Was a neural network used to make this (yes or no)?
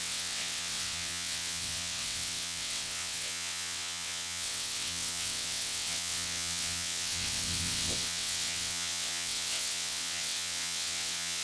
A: yes